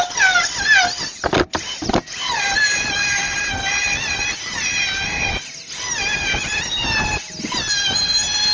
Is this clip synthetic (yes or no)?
no